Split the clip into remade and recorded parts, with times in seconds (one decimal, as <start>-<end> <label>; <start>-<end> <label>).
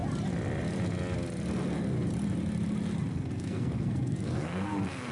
0.0-3.1 recorded; 3.1-5.1 remade